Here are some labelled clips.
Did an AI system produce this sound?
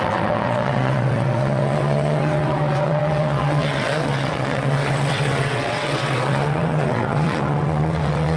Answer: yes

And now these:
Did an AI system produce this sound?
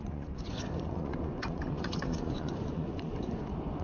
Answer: yes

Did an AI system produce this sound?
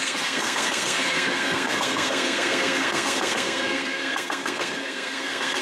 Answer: yes